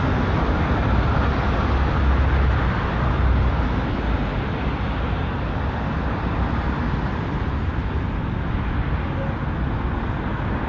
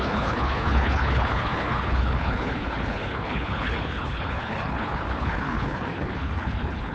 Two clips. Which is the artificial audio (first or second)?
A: second